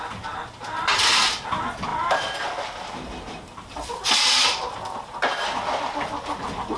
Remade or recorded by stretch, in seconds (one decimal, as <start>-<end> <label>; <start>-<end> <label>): 0.0-6.8 recorded